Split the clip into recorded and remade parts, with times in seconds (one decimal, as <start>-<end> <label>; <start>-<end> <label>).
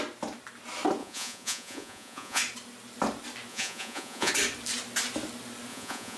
0.0-1.0 recorded; 1.0-2.4 remade; 2.4-3.5 recorded; 3.5-4.3 remade; 4.3-5.7 recorded; 5.7-6.2 remade